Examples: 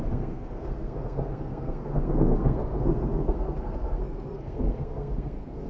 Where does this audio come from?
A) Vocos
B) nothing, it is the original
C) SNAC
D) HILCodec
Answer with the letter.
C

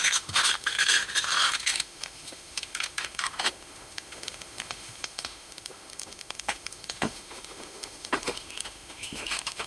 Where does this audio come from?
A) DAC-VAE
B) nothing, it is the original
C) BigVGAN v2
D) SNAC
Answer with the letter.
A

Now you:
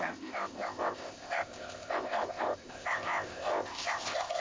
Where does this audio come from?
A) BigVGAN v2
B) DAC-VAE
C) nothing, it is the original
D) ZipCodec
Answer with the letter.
D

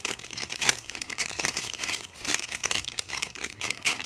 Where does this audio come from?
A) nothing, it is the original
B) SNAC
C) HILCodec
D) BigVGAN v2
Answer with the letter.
B